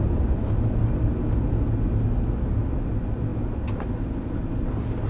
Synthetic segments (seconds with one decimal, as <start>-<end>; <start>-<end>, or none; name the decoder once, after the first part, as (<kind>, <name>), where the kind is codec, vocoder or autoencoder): none